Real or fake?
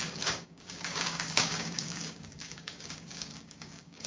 fake